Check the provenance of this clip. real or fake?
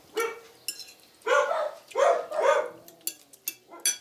real